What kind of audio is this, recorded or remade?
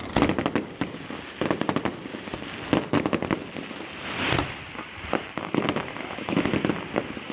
recorded